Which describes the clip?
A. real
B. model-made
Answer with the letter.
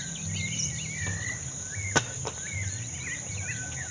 A